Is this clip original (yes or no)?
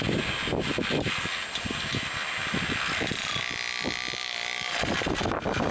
yes